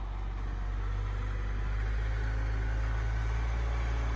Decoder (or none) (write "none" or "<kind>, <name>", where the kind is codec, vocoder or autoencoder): none